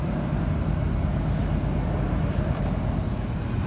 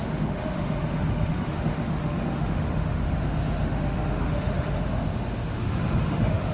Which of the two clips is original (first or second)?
first